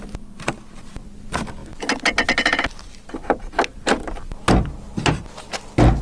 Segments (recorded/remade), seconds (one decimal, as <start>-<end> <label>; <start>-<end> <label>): 0.0-6.0 recorded